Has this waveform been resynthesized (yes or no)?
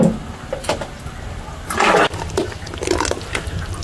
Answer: no